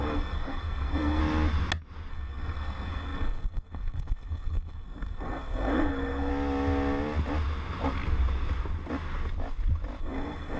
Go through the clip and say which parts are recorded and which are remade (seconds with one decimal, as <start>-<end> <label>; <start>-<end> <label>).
0.0-1.2 remade; 1.2-2.1 recorded; 2.1-6.3 remade; 6.3-10.0 recorded; 10.0-10.6 remade